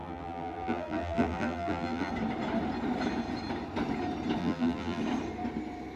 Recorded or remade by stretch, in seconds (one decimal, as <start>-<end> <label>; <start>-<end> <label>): 0.0-2.1 remade; 2.1-4.4 recorded; 4.4-5.0 remade; 5.0-6.0 recorded